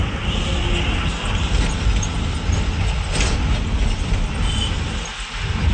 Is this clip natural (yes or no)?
yes